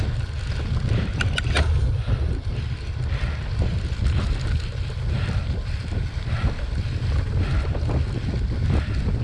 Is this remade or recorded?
recorded